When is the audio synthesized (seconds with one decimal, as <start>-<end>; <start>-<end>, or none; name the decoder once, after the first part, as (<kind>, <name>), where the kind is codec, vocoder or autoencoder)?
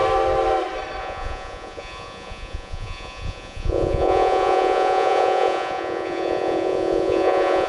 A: 1.0-7.7 (vocoder, Vocos)